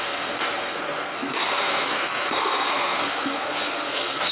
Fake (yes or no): yes